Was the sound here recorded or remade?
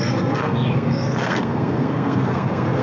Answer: remade